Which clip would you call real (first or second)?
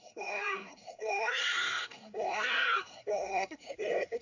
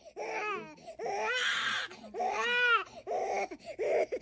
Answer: second